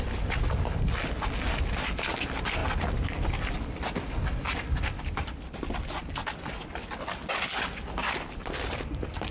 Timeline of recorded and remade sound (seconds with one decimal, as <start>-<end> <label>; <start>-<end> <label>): 0.0-9.3 recorded

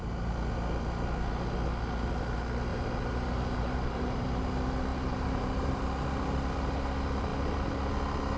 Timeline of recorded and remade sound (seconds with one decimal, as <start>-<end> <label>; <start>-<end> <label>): 0.0-2.7 recorded; 2.7-4.4 remade; 4.4-4.9 recorded; 4.9-5.8 remade; 5.8-8.4 recorded

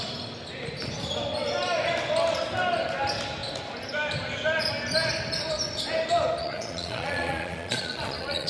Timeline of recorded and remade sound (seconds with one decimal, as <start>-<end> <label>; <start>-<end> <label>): 0.0-6.4 recorded; 6.4-8.5 remade

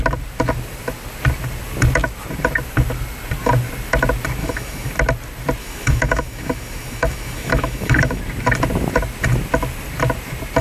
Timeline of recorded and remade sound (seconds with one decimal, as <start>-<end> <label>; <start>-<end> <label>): 0.0-4.4 recorded; 4.4-4.9 remade; 4.9-5.6 recorded; 5.6-8.2 remade; 8.2-10.6 recorded